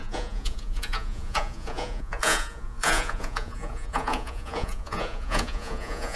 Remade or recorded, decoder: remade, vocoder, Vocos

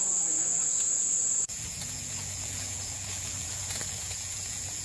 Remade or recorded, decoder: remade, vocoder, Vocos